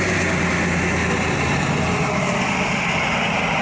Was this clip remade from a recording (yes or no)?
no